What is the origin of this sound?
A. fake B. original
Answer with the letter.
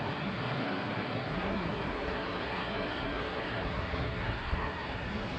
A